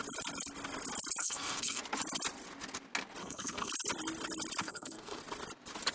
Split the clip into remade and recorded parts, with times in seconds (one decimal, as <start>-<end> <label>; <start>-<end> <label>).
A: 0.0-1.2 recorded; 1.2-1.8 remade; 1.8-3.2 recorded; 3.2-3.7 remade; 3.7-4.6 recorded; 4.6-5.2 remade; 5.2-5.9 recorded